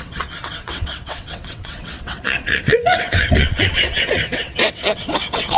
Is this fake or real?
fake